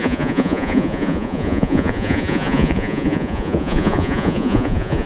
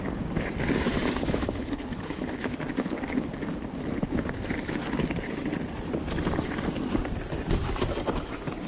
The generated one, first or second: first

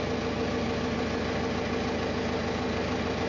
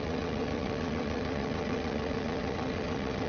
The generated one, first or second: second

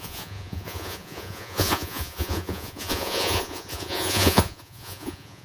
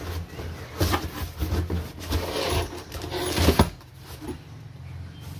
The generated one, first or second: first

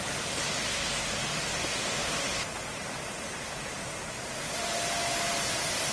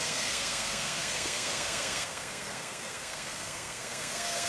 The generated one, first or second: second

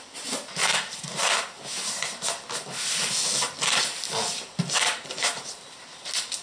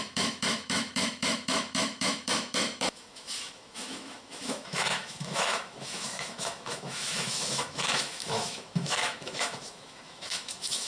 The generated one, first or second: second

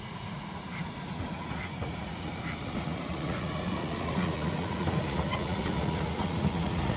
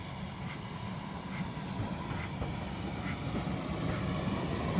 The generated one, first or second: first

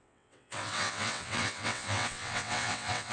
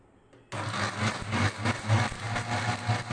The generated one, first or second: first